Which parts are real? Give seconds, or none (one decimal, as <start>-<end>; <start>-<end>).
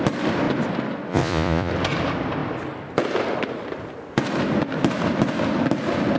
0.0-1.1; 1.7-6.2